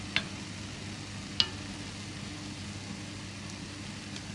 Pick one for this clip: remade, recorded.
recorded